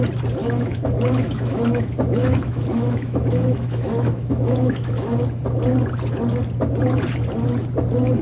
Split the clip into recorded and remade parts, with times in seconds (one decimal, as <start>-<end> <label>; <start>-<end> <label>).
0.0-0.4 recorded; 0.4-5.2 remade; 5.2-8.2 recorded